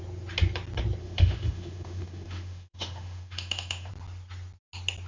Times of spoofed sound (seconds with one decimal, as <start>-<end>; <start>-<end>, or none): 1.0-3.9

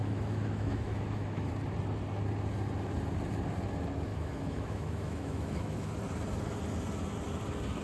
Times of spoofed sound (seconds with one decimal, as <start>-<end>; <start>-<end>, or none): 0.0-1.5; 4.1-5.9

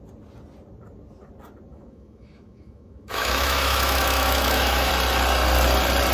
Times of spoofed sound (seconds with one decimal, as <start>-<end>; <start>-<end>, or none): 1.7-4.9

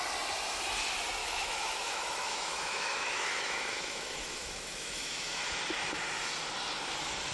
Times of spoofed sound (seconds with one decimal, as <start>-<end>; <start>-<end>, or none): 1.2-5.4